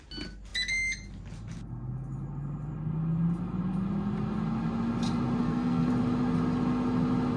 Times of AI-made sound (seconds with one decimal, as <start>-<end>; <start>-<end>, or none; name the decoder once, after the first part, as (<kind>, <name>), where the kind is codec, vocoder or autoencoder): 5.4-5.9 (codec, SNAC)